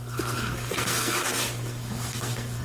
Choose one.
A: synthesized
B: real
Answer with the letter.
A